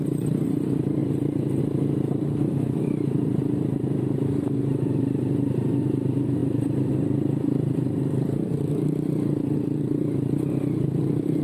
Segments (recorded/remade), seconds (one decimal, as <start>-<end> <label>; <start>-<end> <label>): 0.0-11.4 remade